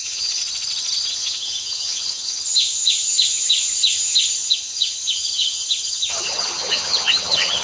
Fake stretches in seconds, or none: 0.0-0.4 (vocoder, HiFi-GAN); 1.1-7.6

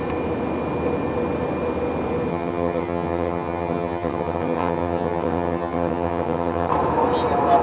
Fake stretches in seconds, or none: 2.3-6.7 (vocoder, HiFi-GAN)

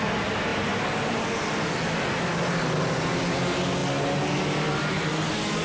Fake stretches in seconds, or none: none

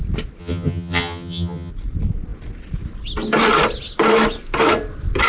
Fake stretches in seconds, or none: 0.4-1.7 (vocoder, HiFi-GAN)

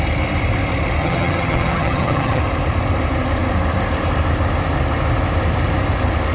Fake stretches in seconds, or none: 1.0-2.4 (vocoder, HiFi-GAN)